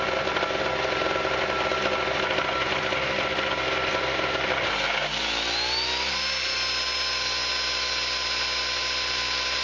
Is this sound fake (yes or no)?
no